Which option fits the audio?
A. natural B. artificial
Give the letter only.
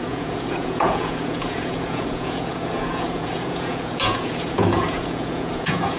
B